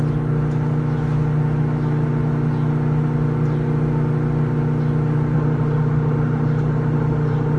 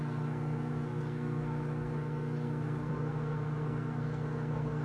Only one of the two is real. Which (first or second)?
first